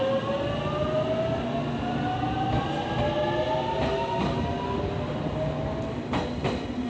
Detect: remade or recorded recorded